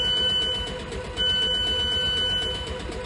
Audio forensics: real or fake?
real